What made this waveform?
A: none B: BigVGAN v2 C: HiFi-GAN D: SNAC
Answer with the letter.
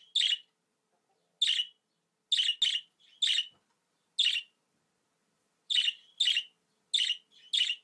A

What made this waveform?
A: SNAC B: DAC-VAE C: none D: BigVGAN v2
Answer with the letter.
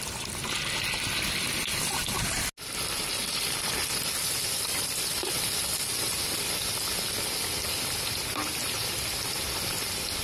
C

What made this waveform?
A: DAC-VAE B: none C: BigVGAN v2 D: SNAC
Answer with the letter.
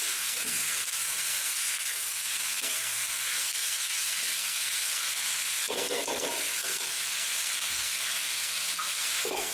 D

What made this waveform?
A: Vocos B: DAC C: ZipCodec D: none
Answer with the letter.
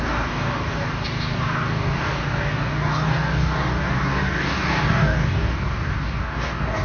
B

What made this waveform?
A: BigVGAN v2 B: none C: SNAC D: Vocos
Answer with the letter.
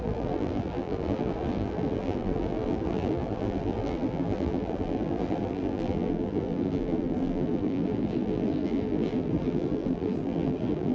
A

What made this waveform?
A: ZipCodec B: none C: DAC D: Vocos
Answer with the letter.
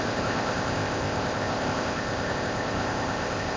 A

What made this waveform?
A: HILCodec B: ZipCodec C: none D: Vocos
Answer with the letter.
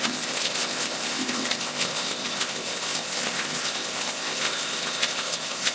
B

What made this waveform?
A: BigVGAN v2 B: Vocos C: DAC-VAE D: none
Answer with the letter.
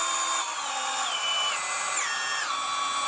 D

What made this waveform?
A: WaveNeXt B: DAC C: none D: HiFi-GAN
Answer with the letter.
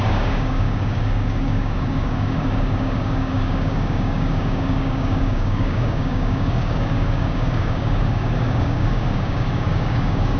B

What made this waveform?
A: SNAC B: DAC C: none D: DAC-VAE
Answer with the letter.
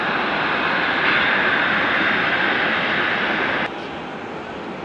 C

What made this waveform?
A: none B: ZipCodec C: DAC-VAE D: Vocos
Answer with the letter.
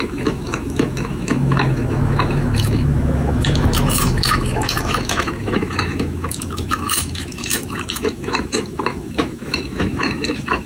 C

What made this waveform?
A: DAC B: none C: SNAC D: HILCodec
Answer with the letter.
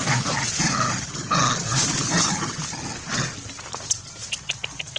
B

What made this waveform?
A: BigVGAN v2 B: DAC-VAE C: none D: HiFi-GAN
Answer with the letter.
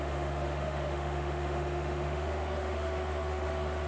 B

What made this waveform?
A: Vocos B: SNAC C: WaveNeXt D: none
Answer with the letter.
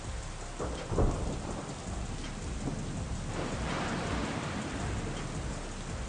D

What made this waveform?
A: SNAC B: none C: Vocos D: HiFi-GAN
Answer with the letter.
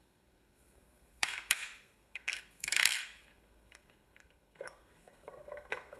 A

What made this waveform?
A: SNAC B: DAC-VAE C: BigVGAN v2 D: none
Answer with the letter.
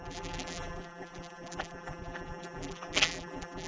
C